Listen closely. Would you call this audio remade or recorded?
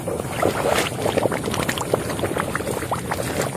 recorded